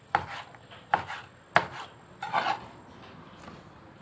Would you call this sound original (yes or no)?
yes